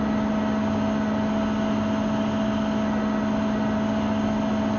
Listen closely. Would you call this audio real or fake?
real